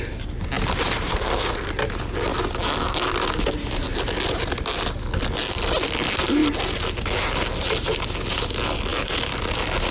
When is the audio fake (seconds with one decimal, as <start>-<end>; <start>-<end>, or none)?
1.1-1.7